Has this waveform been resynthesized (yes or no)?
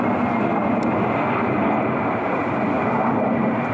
no